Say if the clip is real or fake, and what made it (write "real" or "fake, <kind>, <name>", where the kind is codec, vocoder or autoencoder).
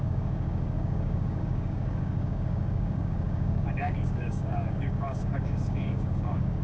fake, codec, DAC